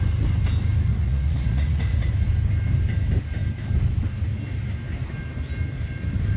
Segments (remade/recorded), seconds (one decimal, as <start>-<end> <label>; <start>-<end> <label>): 0.0-0.9 recorded; 0.9-2.1 remade; 2.1-6.4 recorded